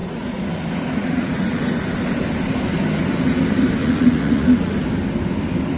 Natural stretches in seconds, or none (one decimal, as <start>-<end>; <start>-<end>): 0.5-1.0; 1.6-3.8; 4.7-5.8